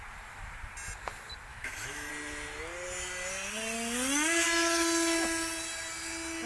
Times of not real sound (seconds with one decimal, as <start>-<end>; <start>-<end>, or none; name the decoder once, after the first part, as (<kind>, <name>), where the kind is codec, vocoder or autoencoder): 1.5-2.1 (autoencoder, DAC-VAE)